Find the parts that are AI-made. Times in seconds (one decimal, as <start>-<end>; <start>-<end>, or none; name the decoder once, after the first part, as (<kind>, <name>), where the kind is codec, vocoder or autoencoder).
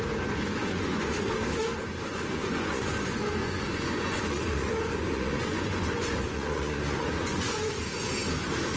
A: 0.6-1.1 (vocoder, Vocos); 2.1-2.9; 3.4-7.7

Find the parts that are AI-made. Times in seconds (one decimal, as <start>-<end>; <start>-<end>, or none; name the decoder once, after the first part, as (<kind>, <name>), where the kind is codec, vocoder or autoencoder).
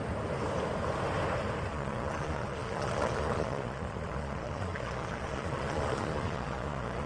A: 1.7-7.1 (vocoder, Vocos)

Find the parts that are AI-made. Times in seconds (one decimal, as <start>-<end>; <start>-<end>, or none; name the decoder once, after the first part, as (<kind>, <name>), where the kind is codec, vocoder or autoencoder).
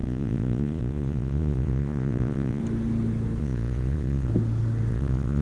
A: 0.0-2.6 (vocoder, Vocos); 3.4-4.3; 4.9-5.4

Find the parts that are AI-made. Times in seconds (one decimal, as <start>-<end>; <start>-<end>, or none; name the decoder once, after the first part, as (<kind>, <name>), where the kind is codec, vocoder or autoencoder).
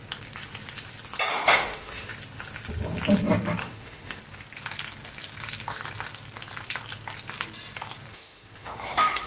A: 1.3-2.1 (autoencoder, DAC-VAE); 3.6-4.2; 8.1-9.3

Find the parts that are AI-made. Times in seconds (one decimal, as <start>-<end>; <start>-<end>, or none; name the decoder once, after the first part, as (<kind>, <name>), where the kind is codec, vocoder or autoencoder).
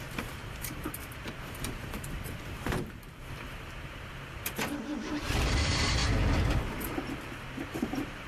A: 0.0-6.0 (vocoder, BigVGAN v2); 7.7-8.3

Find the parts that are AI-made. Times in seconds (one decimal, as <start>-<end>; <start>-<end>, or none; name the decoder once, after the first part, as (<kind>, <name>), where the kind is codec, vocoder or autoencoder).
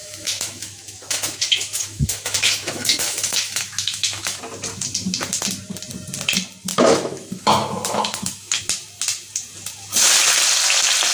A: 0.0-4.4 (autoencoder, DAC-VAE); 6.7-8.6